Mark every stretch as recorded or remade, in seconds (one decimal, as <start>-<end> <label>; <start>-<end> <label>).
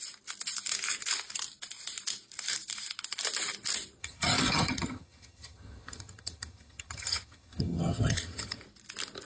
0.0-4.0 recorded; 4.0-8.6 remade; 8.6-9.2 recorded